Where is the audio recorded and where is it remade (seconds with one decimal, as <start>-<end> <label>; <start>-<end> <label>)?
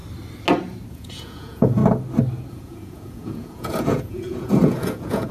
0.0-0.9 recorded; 0.9-1.8 remade; 1.8-2.5 recorded; 2.5-5.3 remade